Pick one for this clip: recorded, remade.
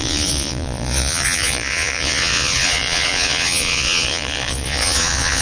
remade